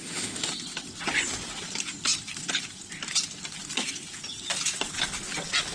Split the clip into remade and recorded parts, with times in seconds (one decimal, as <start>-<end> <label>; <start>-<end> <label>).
0.0-0.5 remade; 0.5-5.7 recorded